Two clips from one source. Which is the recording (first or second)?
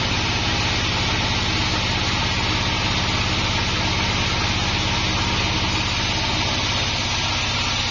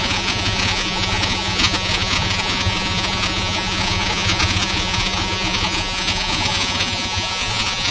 first